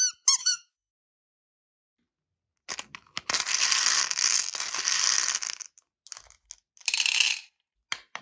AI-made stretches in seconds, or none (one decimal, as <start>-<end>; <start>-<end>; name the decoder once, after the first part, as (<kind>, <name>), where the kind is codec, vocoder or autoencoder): 0.4-0.9 (autoencoder, DAC-VAE)